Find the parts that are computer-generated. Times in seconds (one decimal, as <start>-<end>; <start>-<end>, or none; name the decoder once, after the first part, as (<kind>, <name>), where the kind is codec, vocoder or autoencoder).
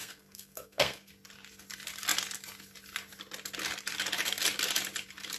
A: 0.0-1.1 (codec, SNAC)